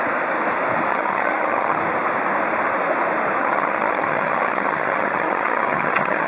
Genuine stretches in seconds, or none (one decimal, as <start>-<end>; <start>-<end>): 0.0-0.9; 1.8-3.4